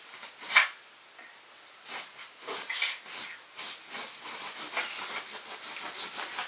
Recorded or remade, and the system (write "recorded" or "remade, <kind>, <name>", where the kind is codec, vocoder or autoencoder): recorded